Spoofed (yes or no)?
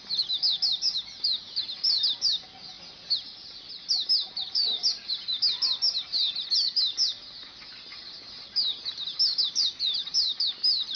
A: no